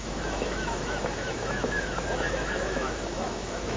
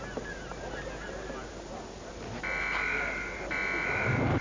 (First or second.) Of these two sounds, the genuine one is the second